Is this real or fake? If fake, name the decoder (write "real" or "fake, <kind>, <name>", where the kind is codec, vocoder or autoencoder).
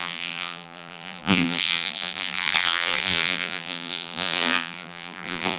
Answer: fake, vocoder, BigVGAN v2